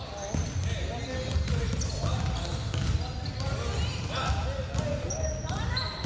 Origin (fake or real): real